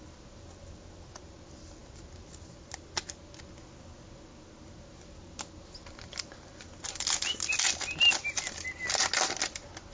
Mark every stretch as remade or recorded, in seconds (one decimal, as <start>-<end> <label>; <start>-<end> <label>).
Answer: 0.0-9.9 recorded